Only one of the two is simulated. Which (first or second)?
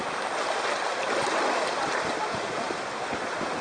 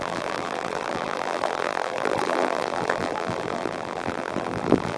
second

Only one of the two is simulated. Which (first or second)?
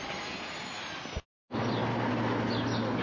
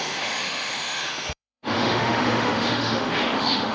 second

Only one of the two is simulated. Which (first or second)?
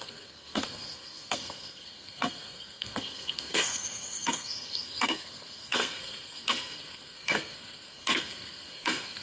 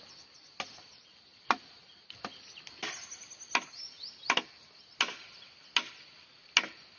first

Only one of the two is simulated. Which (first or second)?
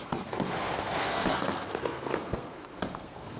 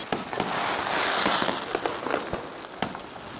first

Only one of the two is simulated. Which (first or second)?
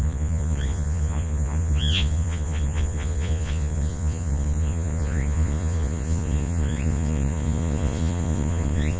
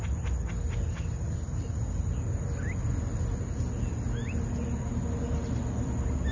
first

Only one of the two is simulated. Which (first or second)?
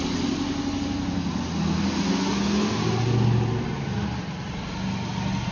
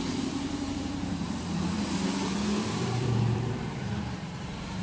second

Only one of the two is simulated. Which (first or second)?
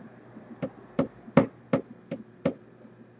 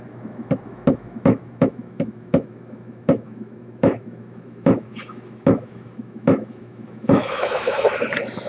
second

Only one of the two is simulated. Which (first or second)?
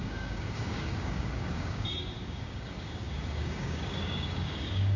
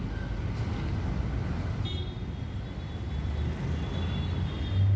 first